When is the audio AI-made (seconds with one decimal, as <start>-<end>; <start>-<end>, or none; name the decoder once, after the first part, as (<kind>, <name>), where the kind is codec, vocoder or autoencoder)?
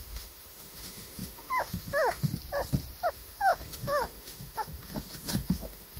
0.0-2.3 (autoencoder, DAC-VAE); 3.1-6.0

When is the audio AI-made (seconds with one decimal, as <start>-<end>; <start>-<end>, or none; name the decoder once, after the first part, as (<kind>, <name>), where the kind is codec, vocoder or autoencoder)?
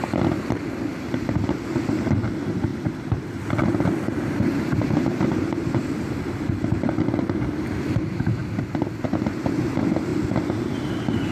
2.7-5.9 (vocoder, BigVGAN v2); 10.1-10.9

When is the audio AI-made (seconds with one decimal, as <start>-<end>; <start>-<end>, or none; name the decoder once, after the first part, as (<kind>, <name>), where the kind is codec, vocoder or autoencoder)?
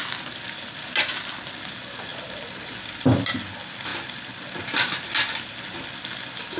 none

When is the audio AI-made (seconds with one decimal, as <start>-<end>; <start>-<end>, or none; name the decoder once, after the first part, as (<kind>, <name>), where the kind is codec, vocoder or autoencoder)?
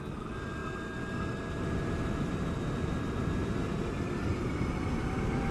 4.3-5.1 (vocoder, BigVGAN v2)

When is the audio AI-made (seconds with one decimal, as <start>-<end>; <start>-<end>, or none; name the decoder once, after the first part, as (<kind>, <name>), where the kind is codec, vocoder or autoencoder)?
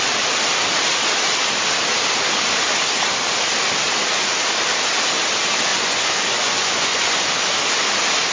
5.7-7.4 (vocoder, Vocos)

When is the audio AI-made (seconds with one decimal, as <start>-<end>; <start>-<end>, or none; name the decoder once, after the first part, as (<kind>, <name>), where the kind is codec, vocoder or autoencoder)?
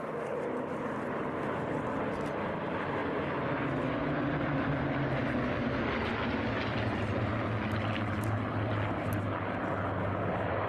6.7-7.3 (vocoder, BigVGAN v2)